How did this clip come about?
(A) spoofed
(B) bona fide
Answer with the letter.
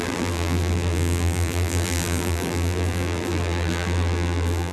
A